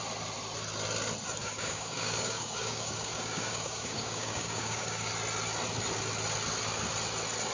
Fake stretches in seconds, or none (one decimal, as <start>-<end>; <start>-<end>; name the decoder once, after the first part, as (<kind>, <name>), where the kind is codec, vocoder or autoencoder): 1.4-5.1 (codec, DAC)